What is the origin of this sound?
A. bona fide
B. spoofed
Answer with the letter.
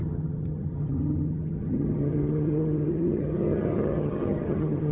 B